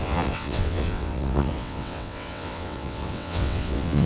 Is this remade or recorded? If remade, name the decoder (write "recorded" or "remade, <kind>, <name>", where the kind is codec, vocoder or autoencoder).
remade, vocoder, WaveNeXt